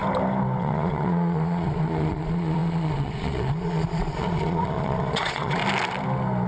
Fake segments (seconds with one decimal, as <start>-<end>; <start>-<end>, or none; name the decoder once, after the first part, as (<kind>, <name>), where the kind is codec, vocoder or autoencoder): 0.6-5.6 (vocoder, Vocos)

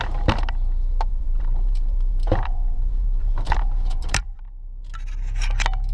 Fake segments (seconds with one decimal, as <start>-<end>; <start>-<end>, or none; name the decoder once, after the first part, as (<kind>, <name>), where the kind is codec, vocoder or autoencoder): 1.1-4.6 (vocoder, BigVGAN v2)

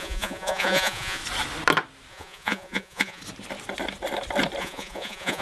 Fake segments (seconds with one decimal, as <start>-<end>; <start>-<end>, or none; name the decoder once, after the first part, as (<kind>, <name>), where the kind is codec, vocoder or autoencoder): 0.0-1.2 (vocoder, Vocos); 2.1-3.2; 4.6-5.4

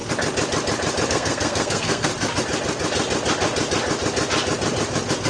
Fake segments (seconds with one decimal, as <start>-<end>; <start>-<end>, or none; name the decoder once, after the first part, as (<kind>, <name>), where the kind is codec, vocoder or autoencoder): 1.1-2.1 (codec, SNAC)